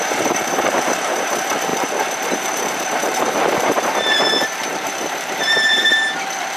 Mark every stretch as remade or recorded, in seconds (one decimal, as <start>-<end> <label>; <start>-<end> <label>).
0.0-6.6 remade